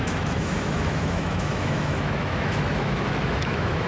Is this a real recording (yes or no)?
no